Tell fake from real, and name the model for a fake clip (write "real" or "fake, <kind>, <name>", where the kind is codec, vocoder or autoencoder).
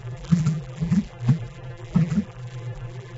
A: fake, vocoder, BigVGAN v2